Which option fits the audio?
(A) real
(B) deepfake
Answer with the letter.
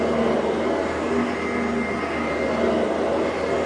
A